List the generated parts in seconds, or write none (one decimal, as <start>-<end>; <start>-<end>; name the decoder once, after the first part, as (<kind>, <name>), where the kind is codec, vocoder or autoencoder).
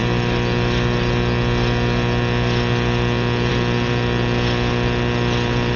none